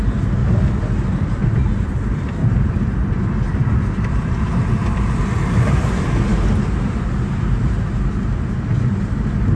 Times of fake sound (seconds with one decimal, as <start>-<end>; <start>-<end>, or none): none